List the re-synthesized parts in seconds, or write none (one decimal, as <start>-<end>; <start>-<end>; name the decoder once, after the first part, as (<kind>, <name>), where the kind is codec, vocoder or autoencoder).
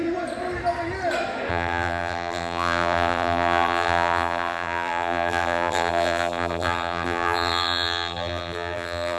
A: 1.5-9.2 (vocoder, BigVGAN v2)